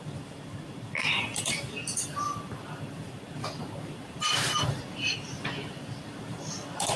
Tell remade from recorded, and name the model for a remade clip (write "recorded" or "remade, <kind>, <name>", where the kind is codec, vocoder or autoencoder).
remade, vocoder, BigVGAN v2